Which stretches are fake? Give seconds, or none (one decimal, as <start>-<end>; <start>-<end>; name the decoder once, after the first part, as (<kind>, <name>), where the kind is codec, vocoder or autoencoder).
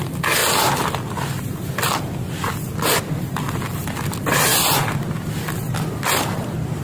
none